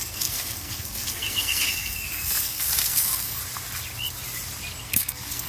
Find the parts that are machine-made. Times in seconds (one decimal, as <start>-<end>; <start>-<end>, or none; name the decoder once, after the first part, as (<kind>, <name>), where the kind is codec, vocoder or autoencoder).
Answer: 0.0-3.4 (codec, SNAC); 4.8-5.5